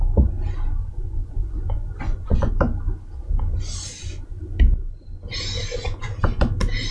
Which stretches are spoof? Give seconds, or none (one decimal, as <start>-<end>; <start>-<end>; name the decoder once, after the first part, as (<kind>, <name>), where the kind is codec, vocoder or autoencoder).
0.8-2.5 (vocoder, Vocos)

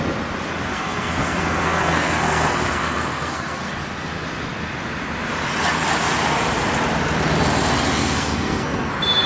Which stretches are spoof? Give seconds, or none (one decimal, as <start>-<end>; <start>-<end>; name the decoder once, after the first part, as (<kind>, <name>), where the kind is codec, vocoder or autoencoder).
0.7-3.7 (codec, SNAC); 8.0-8.9

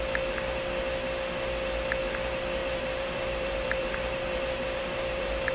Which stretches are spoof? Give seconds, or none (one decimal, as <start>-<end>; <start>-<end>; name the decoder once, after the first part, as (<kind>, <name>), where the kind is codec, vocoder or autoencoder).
2.6-5.5 (vocoder, BigVGAN v2)

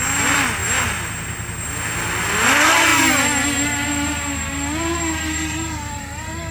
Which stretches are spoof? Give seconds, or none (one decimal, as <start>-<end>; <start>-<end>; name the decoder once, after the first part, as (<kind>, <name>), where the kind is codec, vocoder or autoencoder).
none

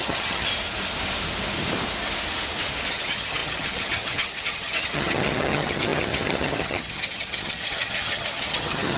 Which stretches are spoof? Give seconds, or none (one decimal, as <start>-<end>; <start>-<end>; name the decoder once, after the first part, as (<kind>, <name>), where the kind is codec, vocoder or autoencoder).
0.0-0.5 (vocoder, HiFi-GAN); 2.9-9.0